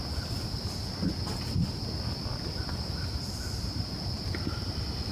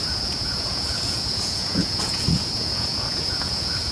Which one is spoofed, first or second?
second